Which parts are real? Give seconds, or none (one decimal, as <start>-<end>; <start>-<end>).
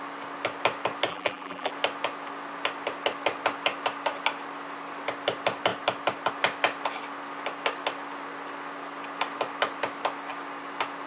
0.0-1.1; 1.7-11.1